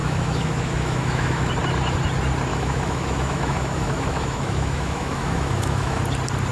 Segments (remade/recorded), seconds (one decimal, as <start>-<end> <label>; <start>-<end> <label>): 0.0-1.5 remade; 1.5-2.5 recorded; 2.5-6.0 remade; 6.0-6.5 recorded